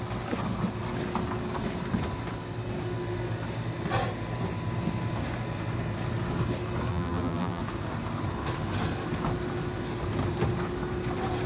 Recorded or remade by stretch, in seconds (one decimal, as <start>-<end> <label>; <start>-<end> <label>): 0.0-6.9 recorded; 6.9-7.6 remade; 7.6-11.5 recorded